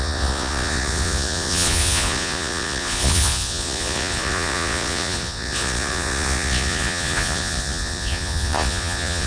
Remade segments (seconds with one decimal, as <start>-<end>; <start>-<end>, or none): 0.0-9.3